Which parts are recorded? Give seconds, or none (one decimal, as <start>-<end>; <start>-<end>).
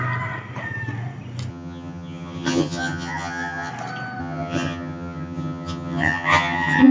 0.0-1.5; 3.7-4.2